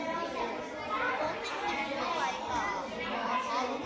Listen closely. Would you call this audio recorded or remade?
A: recorded